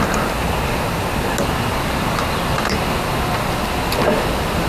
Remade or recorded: recorded